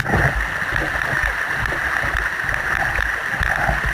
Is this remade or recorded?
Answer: recorded